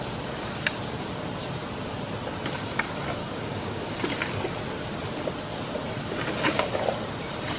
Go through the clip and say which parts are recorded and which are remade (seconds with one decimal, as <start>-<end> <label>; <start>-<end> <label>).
0.0-3.2 recorded; 3.2-3.8 remade; 3.8-7.6 recorded